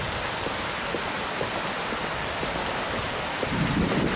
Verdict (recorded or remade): recorded